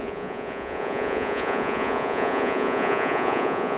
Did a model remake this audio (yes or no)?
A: yes